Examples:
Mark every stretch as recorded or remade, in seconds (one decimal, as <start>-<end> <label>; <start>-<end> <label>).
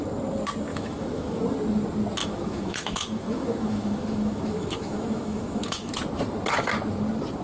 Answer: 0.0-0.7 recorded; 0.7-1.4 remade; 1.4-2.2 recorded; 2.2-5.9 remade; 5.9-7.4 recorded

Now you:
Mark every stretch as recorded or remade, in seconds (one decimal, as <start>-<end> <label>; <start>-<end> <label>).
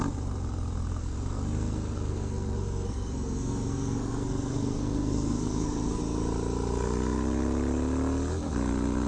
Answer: 0.0-1.0 recorded; 1.0-6.0 remade; 6.0-9.1 recorded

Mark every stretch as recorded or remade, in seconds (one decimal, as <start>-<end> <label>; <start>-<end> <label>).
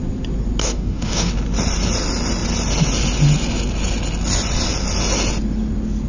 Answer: 0.0-0.6 recorded; 0.6-1.3 remade; 1.3-6.1 recorded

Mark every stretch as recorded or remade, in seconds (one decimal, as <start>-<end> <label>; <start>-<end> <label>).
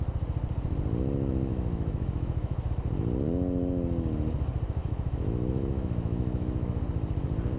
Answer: 0.0-1.5 recorded; 1.5-2.7 remade; 2.7-4.8 recorded; 4.8-6.8 remade; 6.8-7.6 recorded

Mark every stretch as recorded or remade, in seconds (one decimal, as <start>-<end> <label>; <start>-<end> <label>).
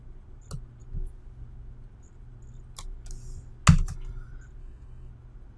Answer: 0.0-4.6 recorded; 4.6-5.1 remade; 5.1-5.6 recorded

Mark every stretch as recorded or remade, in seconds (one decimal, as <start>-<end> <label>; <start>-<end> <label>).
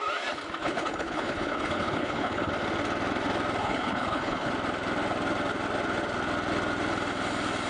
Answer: 0.0-0.6 recorded; 0.6-2.5 remade; 2.5-3.6 recorded; 3.6-4.5 remade; 4.5-7.7 recorded